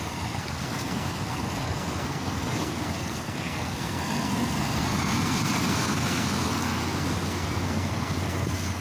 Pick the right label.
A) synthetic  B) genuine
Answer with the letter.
A